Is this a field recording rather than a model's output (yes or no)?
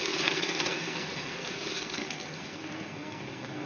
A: no